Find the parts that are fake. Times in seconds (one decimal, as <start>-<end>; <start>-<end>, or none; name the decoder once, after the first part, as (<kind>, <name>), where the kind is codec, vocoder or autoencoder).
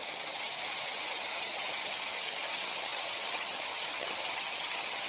0.0-5.1 (vocoder, HiFi-GAN)